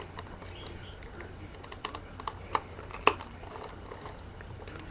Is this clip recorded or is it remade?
recorded